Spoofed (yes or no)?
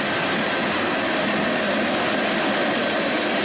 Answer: no